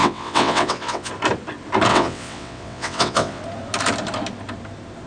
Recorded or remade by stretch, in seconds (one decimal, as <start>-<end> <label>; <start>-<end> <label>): 0.0-1.1 remade; 1.1-1.9 recorded; 1.9-3.4 remade; 3.4-5.1 recorded